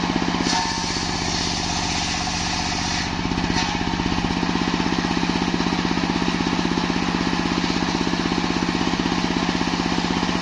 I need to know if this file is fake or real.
real